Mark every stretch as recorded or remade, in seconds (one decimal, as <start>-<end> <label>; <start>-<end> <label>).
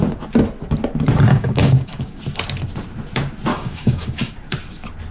0.0-1.3 recorded; 1.3-2.2 remade; 2.2-3.5 recorded; 3.5-4.3 remade; 4.3-5.1 recorded